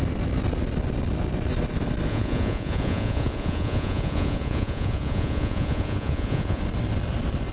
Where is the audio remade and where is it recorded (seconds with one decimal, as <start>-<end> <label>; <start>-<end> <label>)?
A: 0.0-2.1 recorded; 2.1-6.6 remade; 6.6-7.5 recorded